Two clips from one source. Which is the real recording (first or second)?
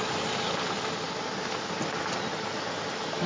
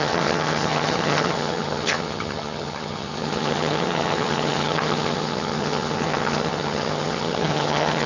first